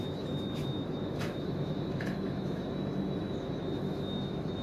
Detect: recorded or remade remade